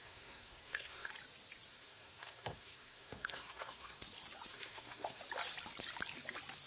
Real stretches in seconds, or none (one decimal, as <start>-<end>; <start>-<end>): 1.1-1.7; 4.0-4.5; 5.2-6.7